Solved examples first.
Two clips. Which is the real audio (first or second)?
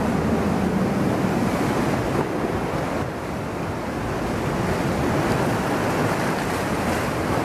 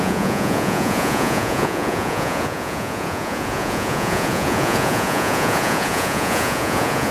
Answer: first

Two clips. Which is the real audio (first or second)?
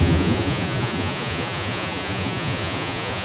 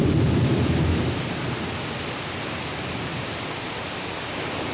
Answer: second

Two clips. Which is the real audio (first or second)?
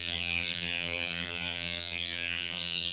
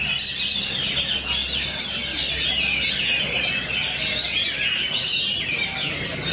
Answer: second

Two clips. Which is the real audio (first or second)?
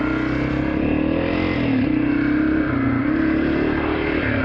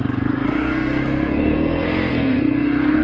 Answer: first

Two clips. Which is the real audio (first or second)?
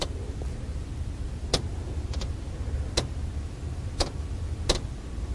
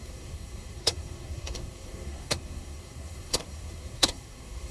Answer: first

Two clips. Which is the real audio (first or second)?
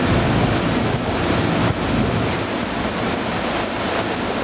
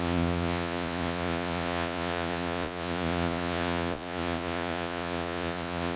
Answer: first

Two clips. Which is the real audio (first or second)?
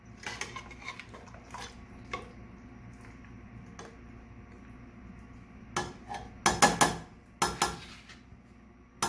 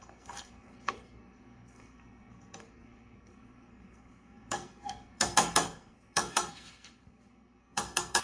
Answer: first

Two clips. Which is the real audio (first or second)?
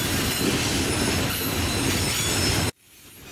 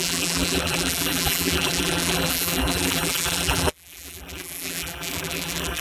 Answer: first